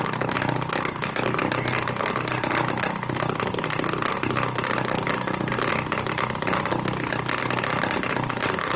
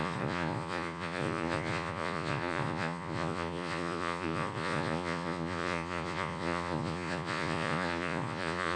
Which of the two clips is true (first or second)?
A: first